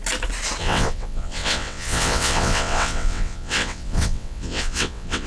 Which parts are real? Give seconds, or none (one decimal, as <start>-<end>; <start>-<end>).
0.0-0.6